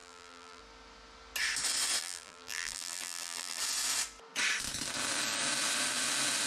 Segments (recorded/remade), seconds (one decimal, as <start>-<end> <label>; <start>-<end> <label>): 0.0-0.6 remade; 0.6-2.0 recorded; 2.0-3.6 remade; 3.6-6.5 recorded